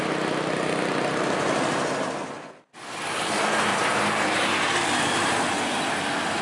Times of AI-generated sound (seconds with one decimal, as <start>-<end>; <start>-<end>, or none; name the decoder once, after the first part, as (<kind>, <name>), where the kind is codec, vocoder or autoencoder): 3.7-4.8 (vocoder, BigVGAN v2)